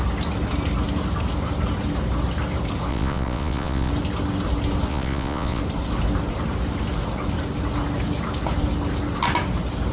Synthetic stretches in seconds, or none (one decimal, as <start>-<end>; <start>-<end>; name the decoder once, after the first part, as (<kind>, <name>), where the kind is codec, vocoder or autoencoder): 2.9-3.9 (vocoder, Vocos); 4.9-5.6